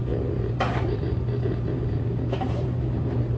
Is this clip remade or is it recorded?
remade